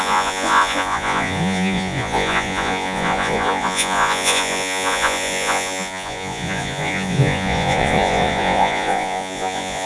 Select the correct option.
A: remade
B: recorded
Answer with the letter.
A